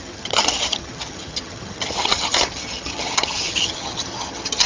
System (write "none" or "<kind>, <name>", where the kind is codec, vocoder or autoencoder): vocoder, HiFi-GAN